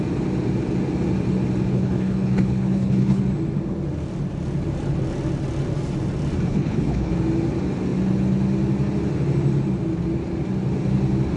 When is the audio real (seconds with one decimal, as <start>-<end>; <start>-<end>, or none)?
0.0-1.7; 3.2-6.5; 7.1-11.4